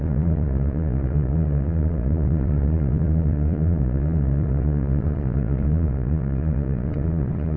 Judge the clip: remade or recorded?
remade